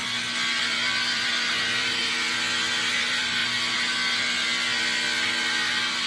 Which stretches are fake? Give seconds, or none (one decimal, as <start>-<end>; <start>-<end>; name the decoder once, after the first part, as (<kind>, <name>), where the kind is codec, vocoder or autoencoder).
0.6-2.0 (vocoder, BigVGAN v2); 2.9-3.4